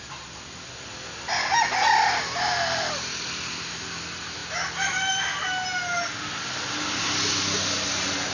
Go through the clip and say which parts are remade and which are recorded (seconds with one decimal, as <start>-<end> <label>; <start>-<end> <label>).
0.0-8.3 recorded